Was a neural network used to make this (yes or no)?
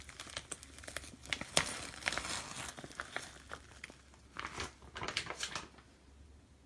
no